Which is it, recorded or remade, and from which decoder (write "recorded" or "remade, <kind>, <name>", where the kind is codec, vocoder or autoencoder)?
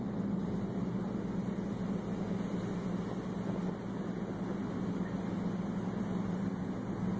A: recorded